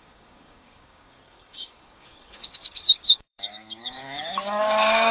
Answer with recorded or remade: remade